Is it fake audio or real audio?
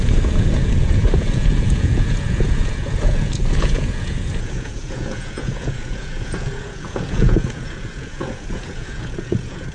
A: fake